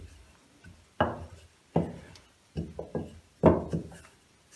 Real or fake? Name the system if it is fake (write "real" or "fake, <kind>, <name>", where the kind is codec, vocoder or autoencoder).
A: real